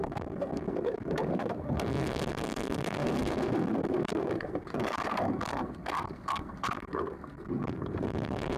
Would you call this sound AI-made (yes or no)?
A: yes